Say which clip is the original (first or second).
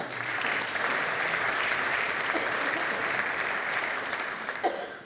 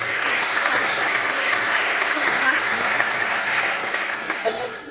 first